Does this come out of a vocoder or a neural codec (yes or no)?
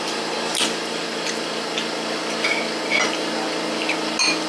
no